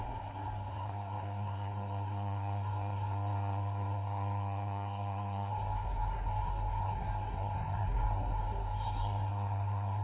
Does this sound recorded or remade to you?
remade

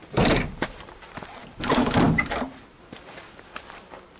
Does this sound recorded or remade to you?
remade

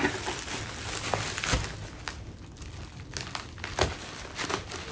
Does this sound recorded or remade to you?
recorded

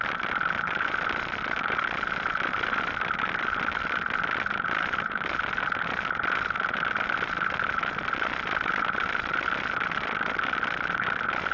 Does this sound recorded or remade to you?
recorded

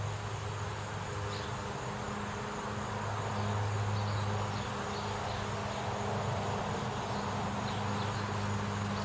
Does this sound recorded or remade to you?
recorded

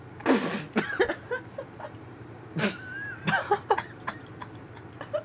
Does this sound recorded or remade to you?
recorded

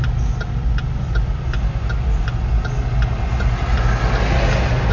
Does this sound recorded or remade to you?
recorded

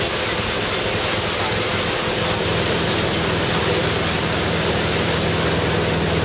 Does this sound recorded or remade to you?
recorded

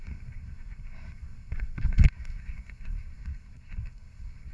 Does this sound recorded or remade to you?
remade